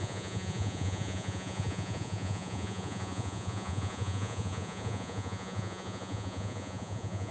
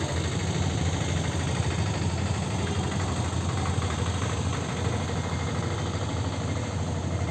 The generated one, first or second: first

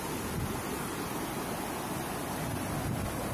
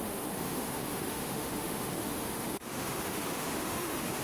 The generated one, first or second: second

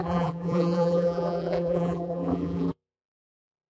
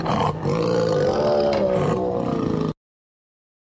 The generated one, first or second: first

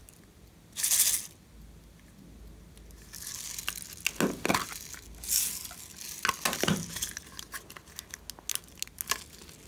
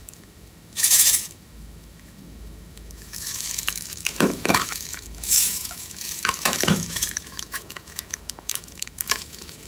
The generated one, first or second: second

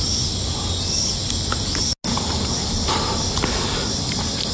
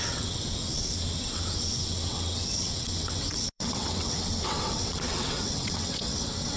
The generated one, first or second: second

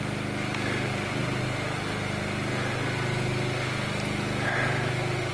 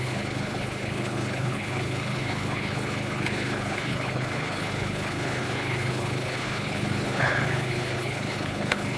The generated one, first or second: second